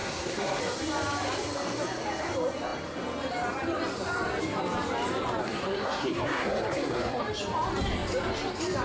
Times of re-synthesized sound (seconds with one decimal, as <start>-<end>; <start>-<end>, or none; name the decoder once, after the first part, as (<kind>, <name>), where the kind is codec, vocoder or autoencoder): 0.0-0.6 (codec, SNAC); 5.4-7.2